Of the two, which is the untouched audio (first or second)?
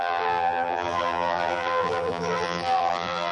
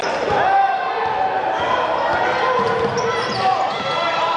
second